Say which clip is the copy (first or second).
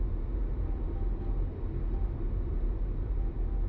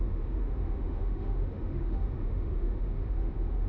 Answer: second